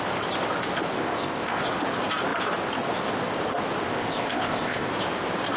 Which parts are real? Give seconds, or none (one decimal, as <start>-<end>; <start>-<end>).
0.0-1.0; 1.6-3.9; 4.9-5.6